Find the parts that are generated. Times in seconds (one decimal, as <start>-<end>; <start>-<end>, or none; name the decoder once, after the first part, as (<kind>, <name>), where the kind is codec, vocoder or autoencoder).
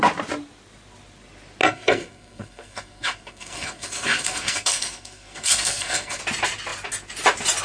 1.6-6.2 (codec, SNAC)